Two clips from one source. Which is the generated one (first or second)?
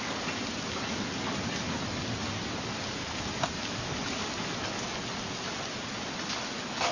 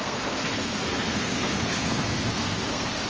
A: second